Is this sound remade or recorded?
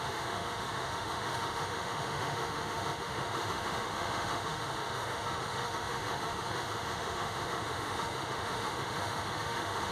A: remade